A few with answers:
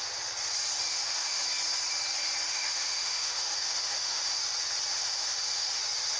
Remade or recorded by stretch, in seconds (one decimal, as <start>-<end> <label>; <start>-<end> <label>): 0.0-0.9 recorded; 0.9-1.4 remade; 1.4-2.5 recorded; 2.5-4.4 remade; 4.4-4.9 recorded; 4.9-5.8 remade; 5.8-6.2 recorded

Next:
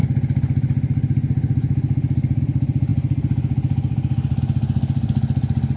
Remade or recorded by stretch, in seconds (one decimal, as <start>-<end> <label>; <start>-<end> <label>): 0.0-5.8 recorded

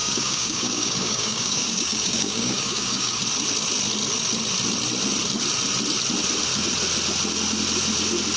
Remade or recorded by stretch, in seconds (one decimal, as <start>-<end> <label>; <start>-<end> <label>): 0.0-3.2 remade; 3.2-8.4 recorded

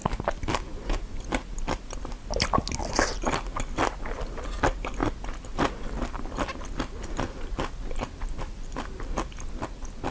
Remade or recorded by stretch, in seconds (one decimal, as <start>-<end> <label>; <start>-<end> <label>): 0.0-10.1 recorded

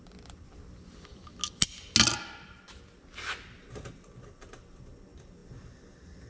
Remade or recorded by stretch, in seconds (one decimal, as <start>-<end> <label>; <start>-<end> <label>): 0.0-6.3 recorded